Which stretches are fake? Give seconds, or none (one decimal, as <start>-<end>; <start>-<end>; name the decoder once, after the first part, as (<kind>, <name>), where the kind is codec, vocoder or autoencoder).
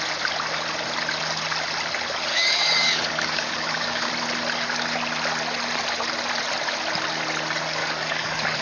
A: 2.3-4.1 (codec, DAC); 7.8-8.6